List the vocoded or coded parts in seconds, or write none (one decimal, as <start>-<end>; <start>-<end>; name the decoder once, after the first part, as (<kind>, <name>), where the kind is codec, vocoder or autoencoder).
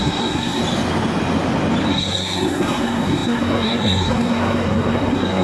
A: 0.0-0.6 (codec, SNAC); 1.9-5.4